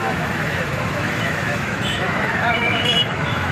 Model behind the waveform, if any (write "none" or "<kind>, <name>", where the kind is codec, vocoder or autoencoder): autoencoder, DAC-VAE